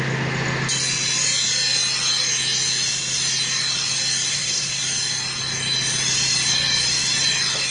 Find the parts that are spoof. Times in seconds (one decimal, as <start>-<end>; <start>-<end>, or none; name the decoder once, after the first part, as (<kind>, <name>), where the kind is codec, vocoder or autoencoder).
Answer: 4.3-4.8 (codec, SNAC)